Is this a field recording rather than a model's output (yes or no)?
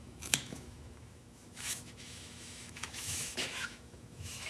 no